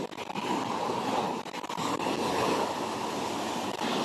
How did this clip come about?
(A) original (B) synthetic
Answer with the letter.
A